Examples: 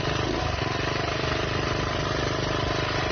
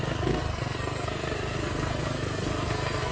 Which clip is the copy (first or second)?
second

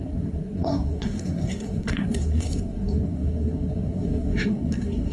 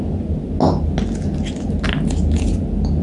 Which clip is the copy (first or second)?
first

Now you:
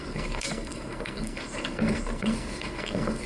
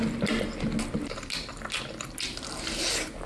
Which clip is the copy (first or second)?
first